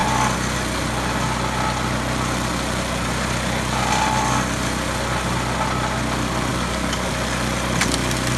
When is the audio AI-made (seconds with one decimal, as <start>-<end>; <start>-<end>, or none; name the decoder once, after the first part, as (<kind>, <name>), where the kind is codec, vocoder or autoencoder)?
6.5-7.1 (codec, DAC)